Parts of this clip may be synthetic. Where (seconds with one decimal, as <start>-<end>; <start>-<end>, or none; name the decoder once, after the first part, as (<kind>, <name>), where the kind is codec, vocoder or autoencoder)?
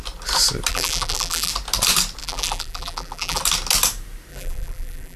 0.7-1.5 (vocoder, BigVGAN v2); 2.2-3.4; 4.3-5.2